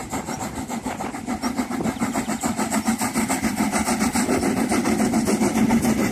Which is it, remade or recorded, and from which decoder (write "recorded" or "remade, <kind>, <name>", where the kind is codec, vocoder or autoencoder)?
remade, vocoder, BigVGAN v2